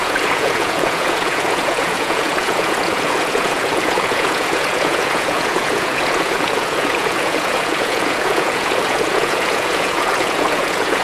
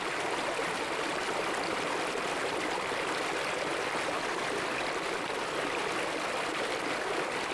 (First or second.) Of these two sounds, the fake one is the first